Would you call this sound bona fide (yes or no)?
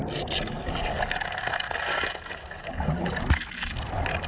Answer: yes